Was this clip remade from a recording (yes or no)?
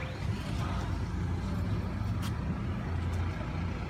no